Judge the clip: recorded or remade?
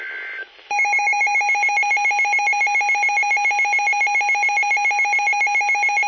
recorded